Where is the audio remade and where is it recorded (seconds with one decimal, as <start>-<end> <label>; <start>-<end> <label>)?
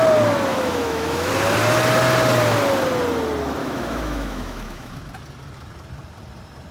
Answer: 0.0-0.5 recorded; 0.5-1.3 remade; 1.3-3.6 recorded; 3.6-5.0 remade; 5.0-6.7 recorded